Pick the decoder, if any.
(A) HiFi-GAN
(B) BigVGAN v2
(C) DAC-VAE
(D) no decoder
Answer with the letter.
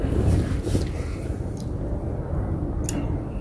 D